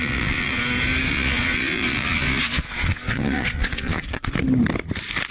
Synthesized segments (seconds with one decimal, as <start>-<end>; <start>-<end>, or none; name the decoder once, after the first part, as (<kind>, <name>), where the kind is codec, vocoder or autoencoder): 0.0-0.6 (vocoder, Vocos); 1.1-4.3